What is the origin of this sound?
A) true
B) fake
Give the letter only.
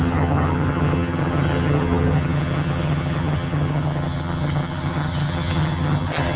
B